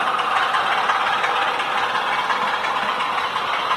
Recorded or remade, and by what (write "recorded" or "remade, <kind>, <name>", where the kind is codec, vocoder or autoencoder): recorded